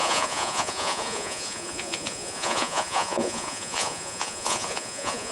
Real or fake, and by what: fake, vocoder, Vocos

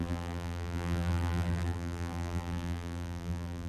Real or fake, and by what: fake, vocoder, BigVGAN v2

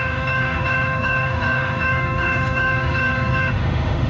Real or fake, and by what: fake, autoencoder, DAC-VAE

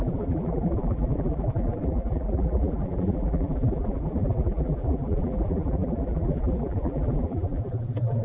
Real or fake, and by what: fake, vocoder, BigVGAN v2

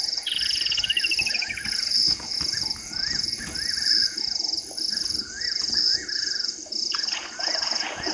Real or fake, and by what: fake, vocoder, Vocos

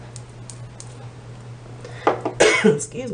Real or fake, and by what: real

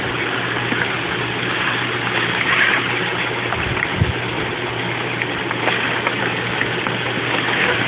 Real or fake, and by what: real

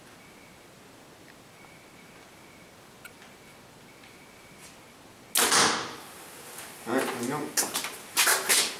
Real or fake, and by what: real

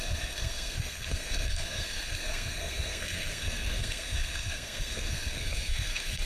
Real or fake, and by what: fake, codec, SNAC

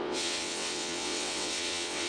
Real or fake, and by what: fake, vocoder, WaveNeXt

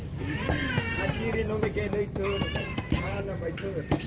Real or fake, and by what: real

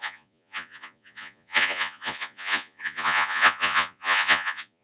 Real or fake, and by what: fake, vocoder, Vocos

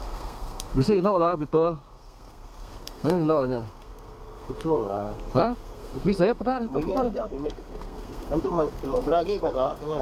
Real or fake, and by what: fake, codec, SNAC